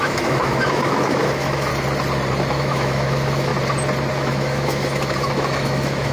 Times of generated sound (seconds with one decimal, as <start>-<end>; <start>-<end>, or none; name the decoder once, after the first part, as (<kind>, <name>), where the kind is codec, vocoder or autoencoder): 0.0-1.7 (autoencoder, DAC-VAE); 2.5-3.5; 4.1-6.1